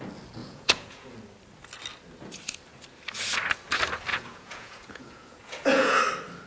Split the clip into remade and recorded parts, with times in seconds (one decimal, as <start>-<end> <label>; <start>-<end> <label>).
0.0-0.4 recorded; 0.4-1.1 remade; 1.1-4.1 recorded; 4.1-6.0 remade; 6.0-6.5 recorded